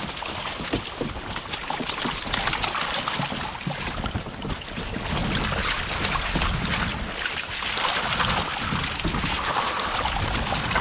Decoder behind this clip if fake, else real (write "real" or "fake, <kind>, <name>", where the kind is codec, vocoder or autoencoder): real